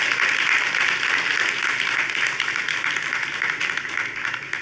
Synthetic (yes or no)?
no